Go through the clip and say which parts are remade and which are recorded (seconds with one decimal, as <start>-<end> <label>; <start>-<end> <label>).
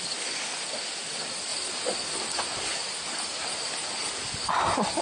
0.0-1.5 recorded; 1.5-4.5 remade; 4.5-5.0 recorded